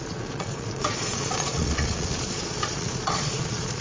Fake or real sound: fake